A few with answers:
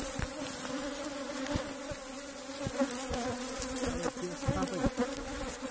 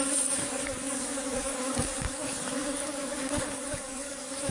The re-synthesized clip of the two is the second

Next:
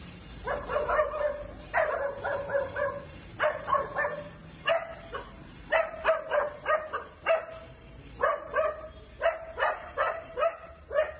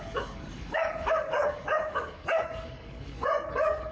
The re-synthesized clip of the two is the second